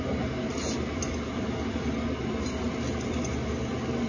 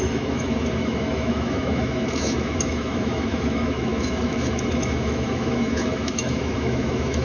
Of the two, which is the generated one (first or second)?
second